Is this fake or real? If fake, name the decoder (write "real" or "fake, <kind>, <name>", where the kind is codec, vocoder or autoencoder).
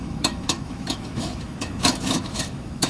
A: fake, autoencoder, DAC-VAE